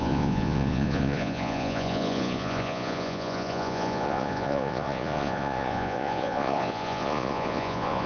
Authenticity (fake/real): fake